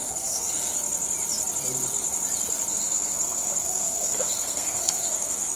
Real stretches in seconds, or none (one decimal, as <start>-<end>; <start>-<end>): 0.7-2.7